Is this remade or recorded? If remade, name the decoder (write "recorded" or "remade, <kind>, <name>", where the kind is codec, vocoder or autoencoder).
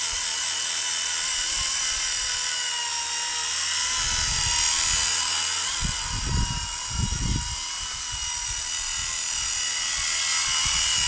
recorded